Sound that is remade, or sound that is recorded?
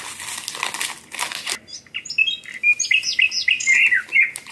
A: recorded